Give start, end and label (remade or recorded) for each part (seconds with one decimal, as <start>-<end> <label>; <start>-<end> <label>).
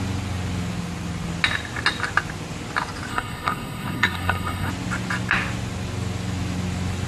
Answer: 0.0-3.1 recorded; 3.1-4.7 remade; 4.7-7.1 recorded